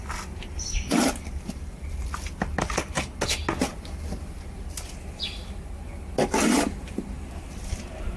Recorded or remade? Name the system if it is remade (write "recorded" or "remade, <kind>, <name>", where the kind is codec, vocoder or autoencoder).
recorded